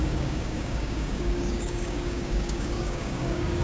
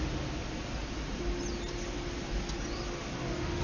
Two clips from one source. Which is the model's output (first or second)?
first